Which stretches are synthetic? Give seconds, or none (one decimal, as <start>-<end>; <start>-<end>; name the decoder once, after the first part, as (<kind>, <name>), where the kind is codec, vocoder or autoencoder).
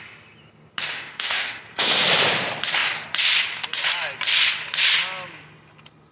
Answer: 0.9-1.6 (autoencoder, DAC-VAE)